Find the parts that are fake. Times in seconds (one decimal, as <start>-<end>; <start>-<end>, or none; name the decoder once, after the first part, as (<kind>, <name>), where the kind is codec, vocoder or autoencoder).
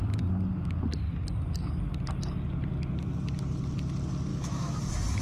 4.3-4.8 (autoencoder, DAC-VAE)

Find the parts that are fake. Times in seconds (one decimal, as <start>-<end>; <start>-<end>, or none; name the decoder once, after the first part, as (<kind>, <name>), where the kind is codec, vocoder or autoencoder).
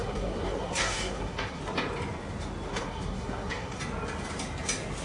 0.0-1.6 (codec, SNAC); 2.7-3.8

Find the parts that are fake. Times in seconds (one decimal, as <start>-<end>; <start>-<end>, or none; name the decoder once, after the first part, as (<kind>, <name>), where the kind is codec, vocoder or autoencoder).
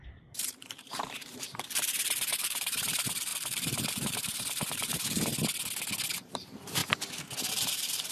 0.0-5.3 (vocoder, BigVGAN v2); 6.1-6.8; 7.5-8.1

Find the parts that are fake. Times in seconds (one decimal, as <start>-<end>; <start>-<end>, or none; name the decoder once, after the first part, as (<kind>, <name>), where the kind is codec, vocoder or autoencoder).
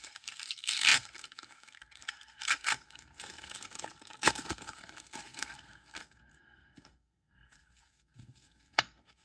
0.0-9.2 (codec, SNAC)